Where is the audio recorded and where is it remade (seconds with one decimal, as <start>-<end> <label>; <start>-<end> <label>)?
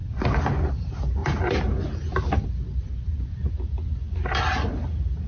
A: 0.0-5.3 recorded